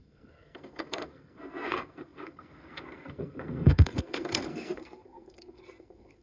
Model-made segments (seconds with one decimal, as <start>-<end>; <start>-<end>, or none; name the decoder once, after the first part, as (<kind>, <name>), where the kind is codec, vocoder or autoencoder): 0.0-6.2 (codec, SNAC)